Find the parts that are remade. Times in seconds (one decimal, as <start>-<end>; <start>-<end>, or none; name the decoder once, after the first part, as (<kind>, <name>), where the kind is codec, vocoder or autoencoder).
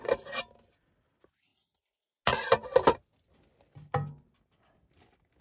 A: none